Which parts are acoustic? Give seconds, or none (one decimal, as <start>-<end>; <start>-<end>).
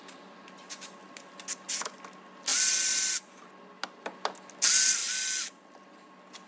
0.0-6.5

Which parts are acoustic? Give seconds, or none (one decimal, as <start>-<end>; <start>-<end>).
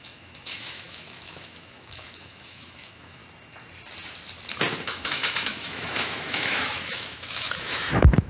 3.2-4.8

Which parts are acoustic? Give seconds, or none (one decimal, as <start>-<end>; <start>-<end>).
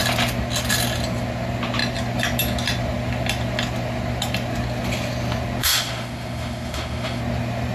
0.0-5.6; 7.2-7.7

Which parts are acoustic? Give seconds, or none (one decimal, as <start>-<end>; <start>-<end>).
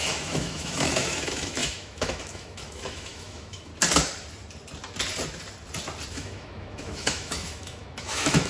3.7-6.1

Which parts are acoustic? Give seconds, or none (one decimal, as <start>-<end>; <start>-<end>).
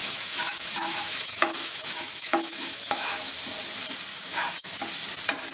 3.3-4.1; 4.8-5.5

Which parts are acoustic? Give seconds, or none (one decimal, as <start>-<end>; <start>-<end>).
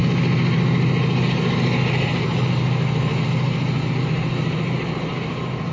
0.0-5.7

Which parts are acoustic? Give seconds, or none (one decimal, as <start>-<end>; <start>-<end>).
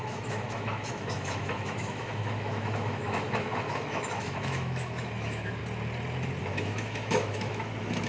5.6-6.4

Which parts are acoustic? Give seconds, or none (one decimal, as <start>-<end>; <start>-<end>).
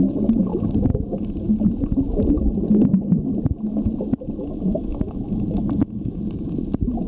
0.0-4.4; 6.2-7.1